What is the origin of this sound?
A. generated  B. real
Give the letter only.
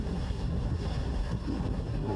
A